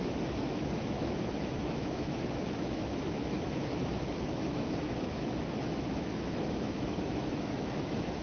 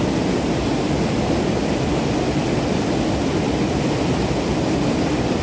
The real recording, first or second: second